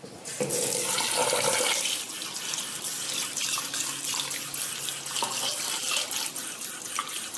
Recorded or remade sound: recorded